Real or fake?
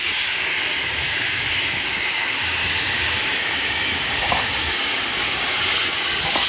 fake